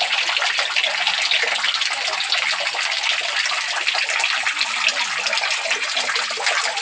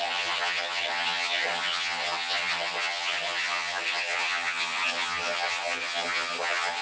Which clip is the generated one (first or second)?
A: second